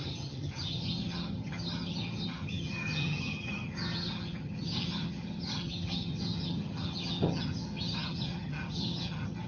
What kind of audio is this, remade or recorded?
remade